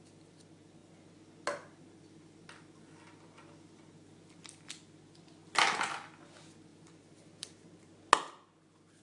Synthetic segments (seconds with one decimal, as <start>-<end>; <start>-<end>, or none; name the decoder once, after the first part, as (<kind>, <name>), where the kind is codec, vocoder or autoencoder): 6.7-8.0 (vocoder, BigVGAN v2)